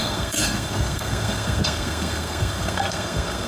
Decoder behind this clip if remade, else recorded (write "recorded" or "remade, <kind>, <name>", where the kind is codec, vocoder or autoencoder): remade, codec, SNAC